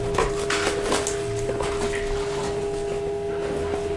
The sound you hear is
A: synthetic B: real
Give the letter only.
B